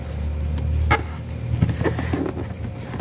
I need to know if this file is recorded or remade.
recorded